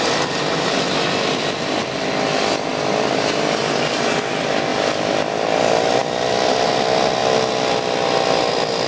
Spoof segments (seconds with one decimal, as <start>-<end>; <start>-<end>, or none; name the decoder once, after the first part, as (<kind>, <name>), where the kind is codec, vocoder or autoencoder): 2.7-3.6 (vocoder, BigVGAN v2); 4.7-5.6; 6.0-6.7